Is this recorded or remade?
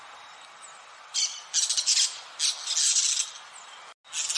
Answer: recorded